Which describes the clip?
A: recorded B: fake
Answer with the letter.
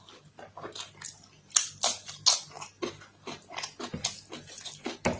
A